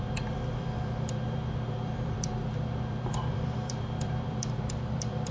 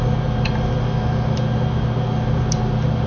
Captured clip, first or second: second